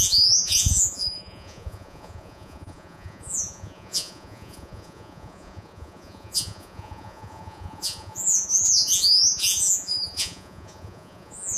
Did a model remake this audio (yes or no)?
yes